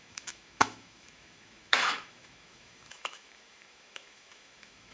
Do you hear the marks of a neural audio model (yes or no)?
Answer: yes